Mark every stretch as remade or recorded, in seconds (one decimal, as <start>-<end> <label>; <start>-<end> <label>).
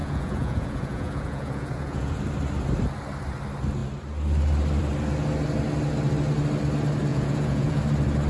0.0-2.2 remade; 2.2-7.1 recorded; 7.1-7.8 remade; 7.8-8.3 recorded